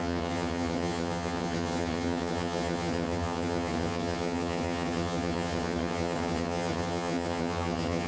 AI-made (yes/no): yes